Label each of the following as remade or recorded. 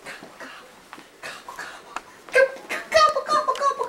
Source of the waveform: recorded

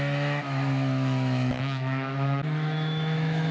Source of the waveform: remade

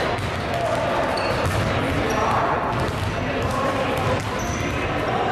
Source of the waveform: recorded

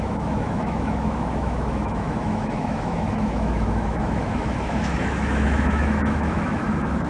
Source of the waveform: remade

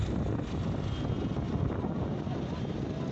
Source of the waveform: recorded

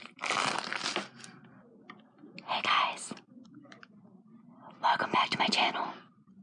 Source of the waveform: recorded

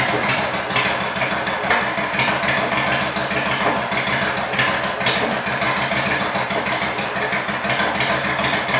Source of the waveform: recorded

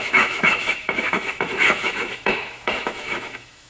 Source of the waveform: remade